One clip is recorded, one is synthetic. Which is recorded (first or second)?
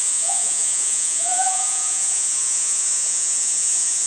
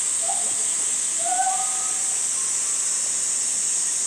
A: second